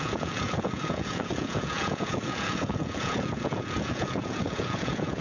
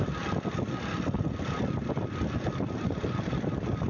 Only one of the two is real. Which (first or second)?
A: second